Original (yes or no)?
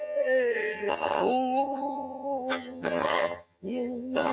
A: no